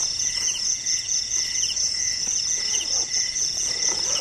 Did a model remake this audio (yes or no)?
yes